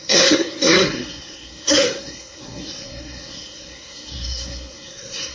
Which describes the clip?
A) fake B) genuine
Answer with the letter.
A